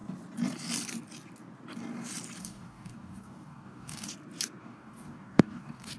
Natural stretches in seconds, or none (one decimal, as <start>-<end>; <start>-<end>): 0.0-2.4; 4.1-4.6